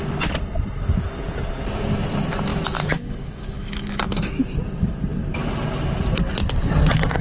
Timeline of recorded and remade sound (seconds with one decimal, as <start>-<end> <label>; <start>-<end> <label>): 0.0-2.5 recorded; 2.5-4.4 remade; 4.4-7.2 recorded